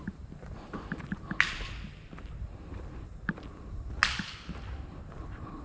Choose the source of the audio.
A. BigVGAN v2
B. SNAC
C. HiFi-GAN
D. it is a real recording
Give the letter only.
D